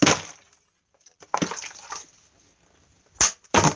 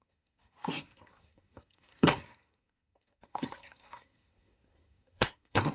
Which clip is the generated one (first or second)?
second